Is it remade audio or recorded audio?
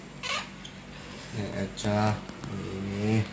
recorded